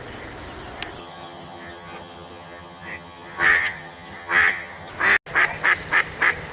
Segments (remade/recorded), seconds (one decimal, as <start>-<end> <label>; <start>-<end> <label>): 0.0-1.0 recorded; 1.0-4.9 remade; 4.9-6.5 recorded